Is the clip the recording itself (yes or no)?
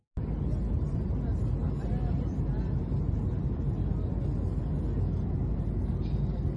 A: yes